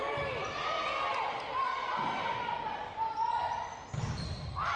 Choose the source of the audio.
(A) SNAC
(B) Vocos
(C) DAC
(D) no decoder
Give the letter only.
D